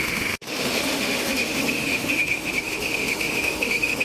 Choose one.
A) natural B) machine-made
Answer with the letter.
B